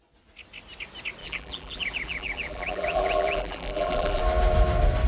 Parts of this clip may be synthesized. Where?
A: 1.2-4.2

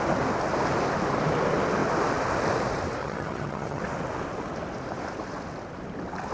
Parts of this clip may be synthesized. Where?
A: 3.0-3.8